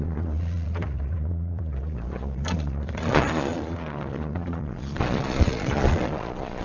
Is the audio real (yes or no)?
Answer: no